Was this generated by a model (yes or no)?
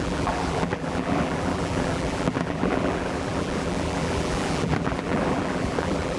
yes